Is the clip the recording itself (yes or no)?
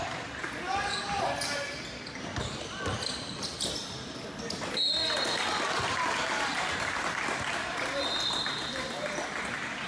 yes